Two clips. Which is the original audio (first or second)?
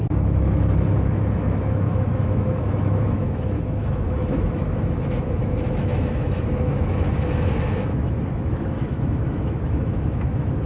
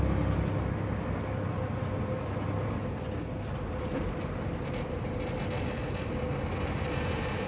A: second